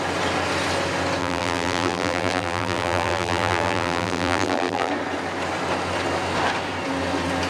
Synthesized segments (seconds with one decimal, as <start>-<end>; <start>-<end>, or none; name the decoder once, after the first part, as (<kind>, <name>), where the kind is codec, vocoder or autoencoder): 1.2-4.9 (vocoder, BigVGAN v2)